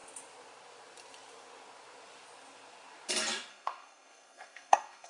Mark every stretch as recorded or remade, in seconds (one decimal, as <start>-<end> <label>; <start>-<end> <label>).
0.0-3.5 recorded; 3.5-5.1 remade

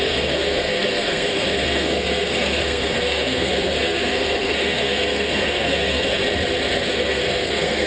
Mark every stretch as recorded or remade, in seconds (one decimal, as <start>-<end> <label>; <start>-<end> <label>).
0.0-6.2 remade; 6.2-6.9 recorded; 6.9-7.9 remade